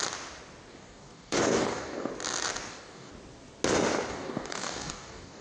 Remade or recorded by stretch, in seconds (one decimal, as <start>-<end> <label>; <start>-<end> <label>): 0.0-0.7 recorded; 0.7-2.1 remade; 2.1-2.7 recorded; 2.7-3.1 remade; 3.1-4.1 recorded; 4.1-5.4 remade